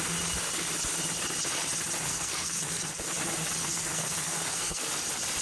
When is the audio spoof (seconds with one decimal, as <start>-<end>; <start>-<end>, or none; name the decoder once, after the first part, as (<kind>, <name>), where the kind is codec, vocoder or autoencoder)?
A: 2.1-2.9 (codec, SNAC); 3.6-4.9